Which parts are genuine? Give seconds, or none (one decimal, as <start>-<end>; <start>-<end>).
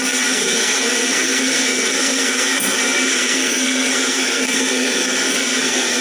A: none